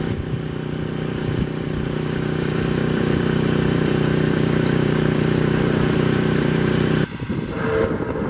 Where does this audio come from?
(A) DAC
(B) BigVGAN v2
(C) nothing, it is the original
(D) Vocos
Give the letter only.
B